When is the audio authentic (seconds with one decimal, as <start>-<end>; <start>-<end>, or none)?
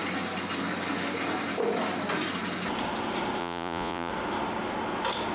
0.0-3.4; 4.1-5.3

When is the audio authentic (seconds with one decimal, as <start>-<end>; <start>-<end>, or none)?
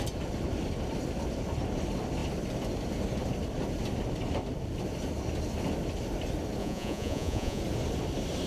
0.0-6.6; 7.6-8.5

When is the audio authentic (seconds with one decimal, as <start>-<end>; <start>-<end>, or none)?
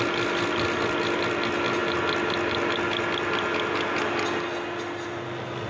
0.0-5.7